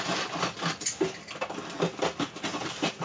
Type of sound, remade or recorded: recorded